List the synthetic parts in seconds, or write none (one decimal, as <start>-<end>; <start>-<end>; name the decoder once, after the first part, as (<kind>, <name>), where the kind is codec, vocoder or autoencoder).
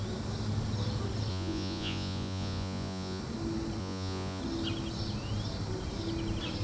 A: 1.3-3.2 (vocoder, Vocos); 3.8-4.4